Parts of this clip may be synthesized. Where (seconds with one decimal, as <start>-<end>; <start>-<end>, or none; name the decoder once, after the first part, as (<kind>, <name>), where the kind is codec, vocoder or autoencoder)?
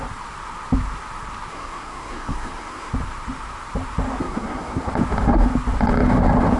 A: 1.5-2.9 (codec, SNAC); 4.2-4.9